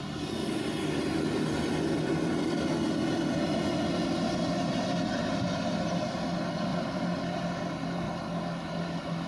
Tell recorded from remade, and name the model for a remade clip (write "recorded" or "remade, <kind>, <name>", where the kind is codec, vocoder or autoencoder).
recorded